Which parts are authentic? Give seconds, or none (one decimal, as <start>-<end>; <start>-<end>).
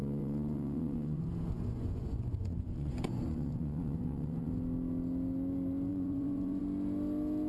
4.5-5.9; 6.6-7.5